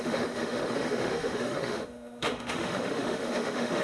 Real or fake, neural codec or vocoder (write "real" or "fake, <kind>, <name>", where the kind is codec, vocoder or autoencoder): fake, autoencoder, DAC-VAE